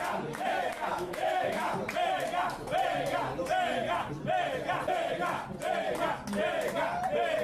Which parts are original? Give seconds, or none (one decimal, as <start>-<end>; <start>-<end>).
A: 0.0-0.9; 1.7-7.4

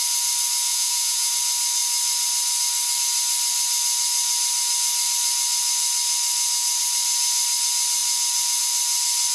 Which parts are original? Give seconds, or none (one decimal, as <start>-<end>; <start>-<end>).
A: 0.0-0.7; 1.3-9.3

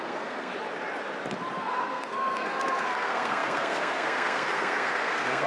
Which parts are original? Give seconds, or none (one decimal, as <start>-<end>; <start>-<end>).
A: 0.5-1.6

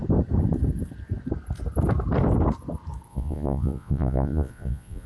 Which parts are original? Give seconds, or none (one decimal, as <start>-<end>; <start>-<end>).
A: 0.0-3.1